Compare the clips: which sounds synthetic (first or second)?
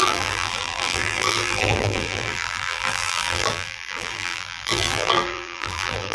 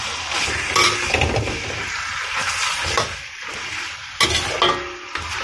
first